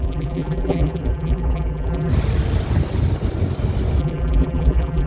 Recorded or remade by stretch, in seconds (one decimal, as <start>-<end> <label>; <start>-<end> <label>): 0.0-2.1 remade; 2.1-4.0 recorded; 4.0-5.1 remade